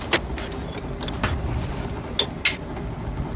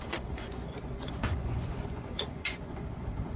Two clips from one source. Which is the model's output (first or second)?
second